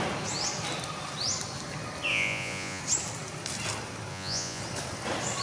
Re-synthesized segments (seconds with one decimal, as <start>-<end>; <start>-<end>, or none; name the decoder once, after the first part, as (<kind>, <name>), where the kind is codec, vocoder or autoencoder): 2.1-2.8 (vocoder, Vocos); 4.1-4.6

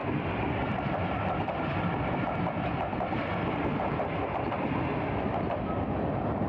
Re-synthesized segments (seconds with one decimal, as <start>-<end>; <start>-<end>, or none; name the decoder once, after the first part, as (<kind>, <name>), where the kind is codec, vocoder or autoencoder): none

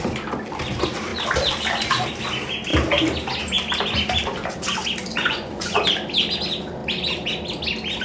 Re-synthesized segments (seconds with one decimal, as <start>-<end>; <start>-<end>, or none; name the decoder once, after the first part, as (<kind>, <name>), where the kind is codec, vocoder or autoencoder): 5.1-5.8 (vocoder, Vocos)

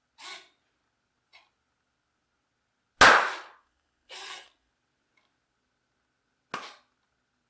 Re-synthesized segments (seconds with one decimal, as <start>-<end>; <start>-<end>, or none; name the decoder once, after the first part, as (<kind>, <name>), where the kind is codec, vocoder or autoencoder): 3.6-4.7 (codec, SNAC)

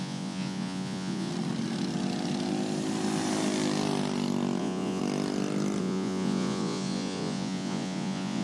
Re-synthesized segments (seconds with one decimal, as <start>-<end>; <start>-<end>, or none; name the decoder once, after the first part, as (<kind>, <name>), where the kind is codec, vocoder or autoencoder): 0.0-1.3 (vocoder, Vocos); 4.6-5.0; 5.8-8.4